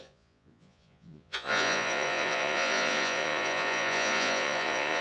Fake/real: fake